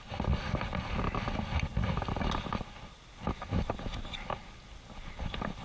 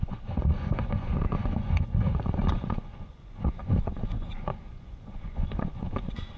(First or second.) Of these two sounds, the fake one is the second